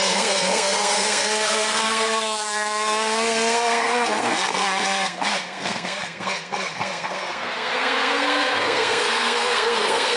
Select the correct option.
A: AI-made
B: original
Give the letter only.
A